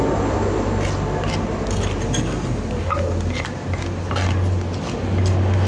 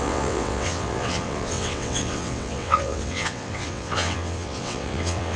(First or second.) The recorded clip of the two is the first